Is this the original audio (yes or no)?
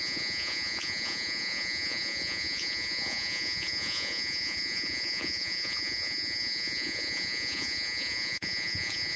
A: no